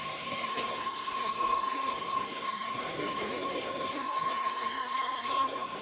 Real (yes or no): no